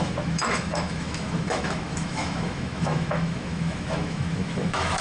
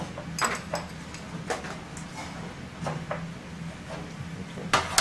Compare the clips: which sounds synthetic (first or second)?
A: first